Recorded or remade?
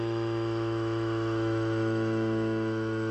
remade